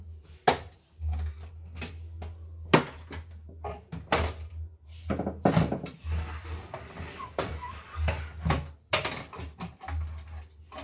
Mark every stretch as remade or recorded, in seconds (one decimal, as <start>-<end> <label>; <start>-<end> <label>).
0.0-6.0 recorded; 6.0-8.0 remade; 8.0-10.8 recorded